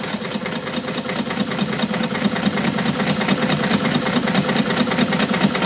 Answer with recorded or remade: recorded